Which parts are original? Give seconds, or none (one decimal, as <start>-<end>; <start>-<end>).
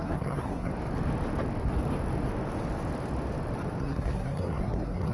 0.7-3.8